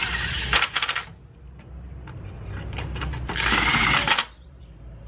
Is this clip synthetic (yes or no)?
no